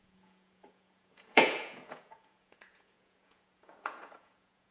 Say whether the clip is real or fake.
fake